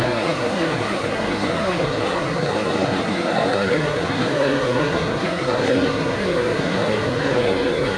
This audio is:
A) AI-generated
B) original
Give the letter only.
A